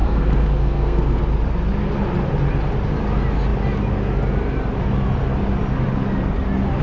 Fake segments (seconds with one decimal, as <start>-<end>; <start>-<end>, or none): 0.0-1.2